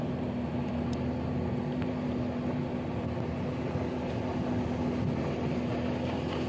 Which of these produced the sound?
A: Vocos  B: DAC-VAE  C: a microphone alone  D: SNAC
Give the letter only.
C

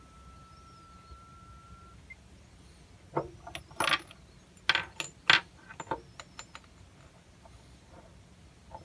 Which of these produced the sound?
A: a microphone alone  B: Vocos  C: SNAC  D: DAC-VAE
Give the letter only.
A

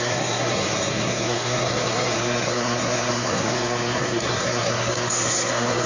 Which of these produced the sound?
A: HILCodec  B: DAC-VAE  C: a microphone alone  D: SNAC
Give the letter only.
D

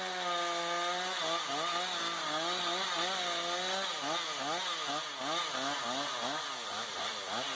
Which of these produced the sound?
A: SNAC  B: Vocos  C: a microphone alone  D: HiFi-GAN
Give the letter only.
C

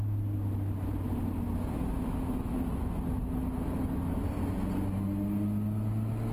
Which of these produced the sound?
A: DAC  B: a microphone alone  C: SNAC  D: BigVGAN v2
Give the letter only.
B